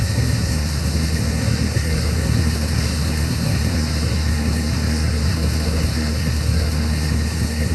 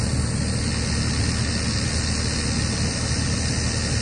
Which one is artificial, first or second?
first